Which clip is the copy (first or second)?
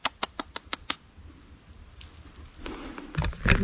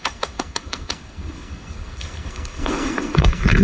second